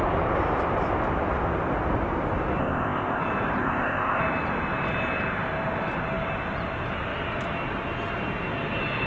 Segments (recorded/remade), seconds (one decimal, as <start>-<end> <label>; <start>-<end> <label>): 0.0-2.6 recorded; 2.6-3.2 remade; 3.2-3.6 recorded; 3.6-4.2 remade; 4.2-9.1 recorded